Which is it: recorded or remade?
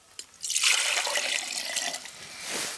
recorded